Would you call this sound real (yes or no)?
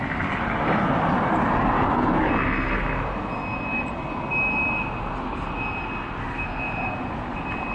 yes